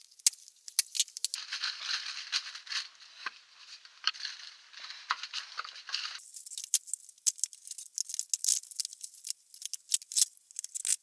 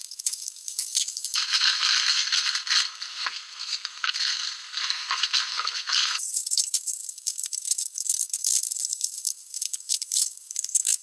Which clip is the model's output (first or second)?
second